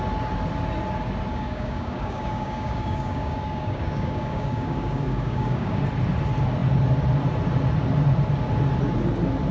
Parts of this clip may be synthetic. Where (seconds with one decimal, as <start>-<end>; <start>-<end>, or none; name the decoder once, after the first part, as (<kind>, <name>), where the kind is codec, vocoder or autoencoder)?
1.3-5.8 (codec, DAC)